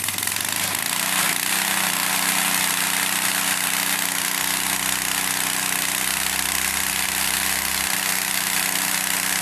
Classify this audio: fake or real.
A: real